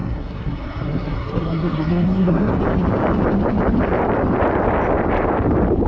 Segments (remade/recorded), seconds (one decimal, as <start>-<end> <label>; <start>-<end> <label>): 0.0-2.5 remade; 2.5-5.9 recorded